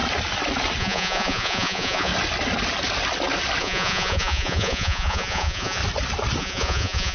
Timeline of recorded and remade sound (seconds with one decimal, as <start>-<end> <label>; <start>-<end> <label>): 0.0-0.8 recorded; 0.8-2.1 remade; 2.1-3.6 recorded; 3.6-5.8 remade; 5.8-6.4 recorded; 6.4-7.1 remade